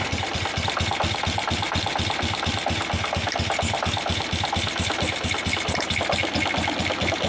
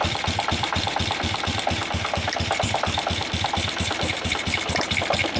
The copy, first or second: second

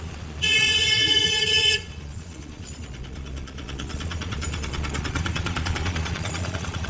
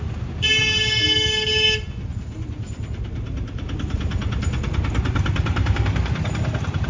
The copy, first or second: first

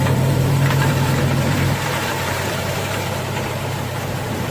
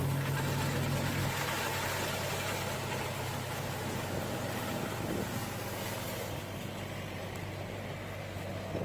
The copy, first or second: first